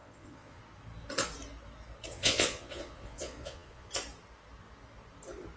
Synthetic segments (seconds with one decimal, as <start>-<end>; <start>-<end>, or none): 0.0-0.6; 2.1-3.9

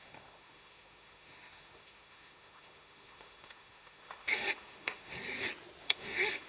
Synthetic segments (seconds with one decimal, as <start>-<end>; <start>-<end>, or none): 0.0-5.1; 5.8-6.5

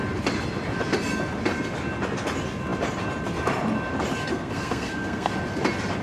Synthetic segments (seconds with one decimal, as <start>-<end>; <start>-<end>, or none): 4.3-5.3